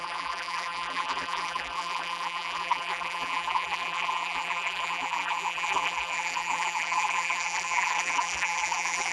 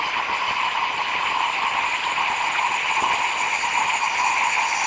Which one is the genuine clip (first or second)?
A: second